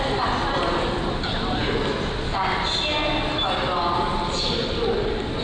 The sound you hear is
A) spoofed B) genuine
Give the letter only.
B